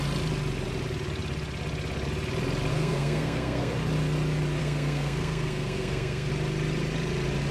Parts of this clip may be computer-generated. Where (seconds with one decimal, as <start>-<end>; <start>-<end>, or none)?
2.7-3.7; 4.6-6.3